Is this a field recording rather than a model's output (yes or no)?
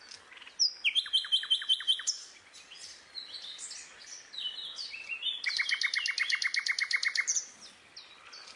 yes